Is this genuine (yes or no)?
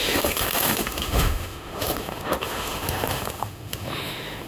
no